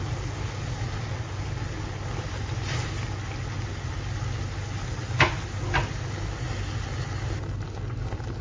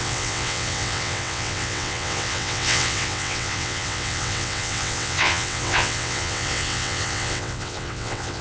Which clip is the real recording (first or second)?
first